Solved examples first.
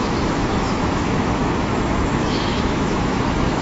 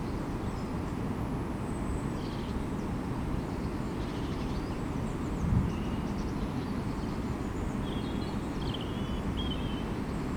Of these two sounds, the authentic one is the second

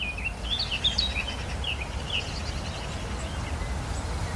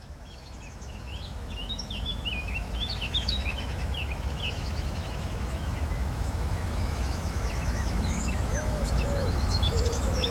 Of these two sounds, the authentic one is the first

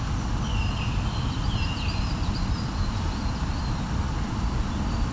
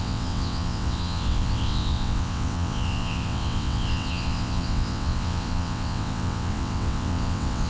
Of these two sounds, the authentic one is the first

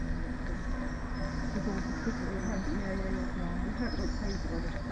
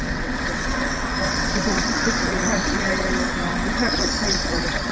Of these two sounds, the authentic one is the first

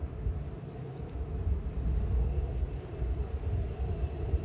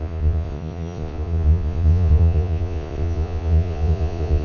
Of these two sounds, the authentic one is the first